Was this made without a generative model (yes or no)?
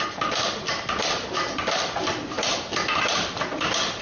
yes